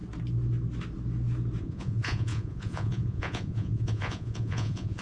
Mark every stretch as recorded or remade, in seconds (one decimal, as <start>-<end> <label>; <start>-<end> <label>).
0.0-1.6 recorded; 1.6-5.0 remade